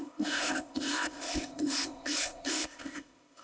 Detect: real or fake fake